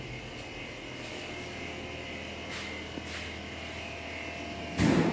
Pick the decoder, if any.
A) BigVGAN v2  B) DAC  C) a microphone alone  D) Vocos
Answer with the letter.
C